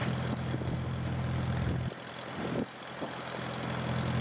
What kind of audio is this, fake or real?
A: real